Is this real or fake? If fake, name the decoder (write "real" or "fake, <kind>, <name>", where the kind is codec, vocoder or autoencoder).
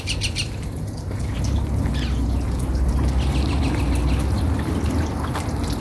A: real